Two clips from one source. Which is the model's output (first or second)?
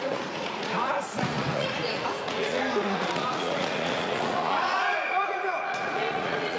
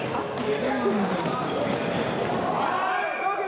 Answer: first